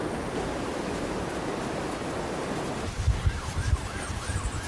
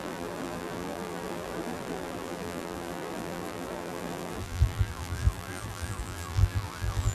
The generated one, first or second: second